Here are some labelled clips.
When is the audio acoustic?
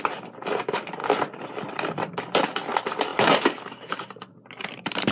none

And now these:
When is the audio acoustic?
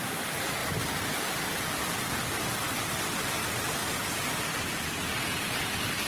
0.0-6.1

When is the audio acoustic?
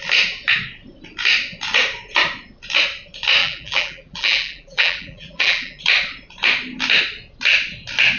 0.0-3.4; 5.8-8.2